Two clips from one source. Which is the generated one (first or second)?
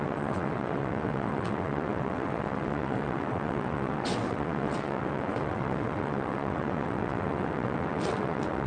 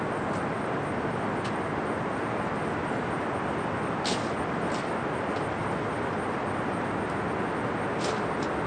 first